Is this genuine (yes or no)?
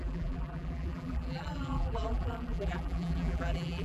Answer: no